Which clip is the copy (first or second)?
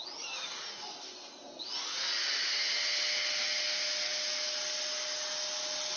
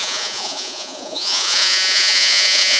second